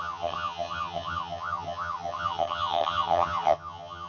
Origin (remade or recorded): remade